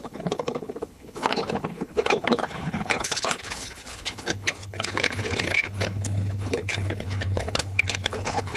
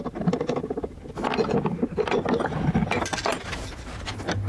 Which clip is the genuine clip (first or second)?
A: second